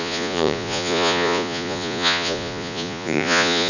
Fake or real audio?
fake